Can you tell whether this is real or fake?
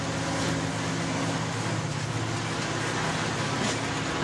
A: real